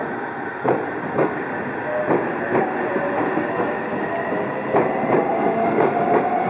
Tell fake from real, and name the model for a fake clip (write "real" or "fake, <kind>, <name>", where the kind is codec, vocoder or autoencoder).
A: real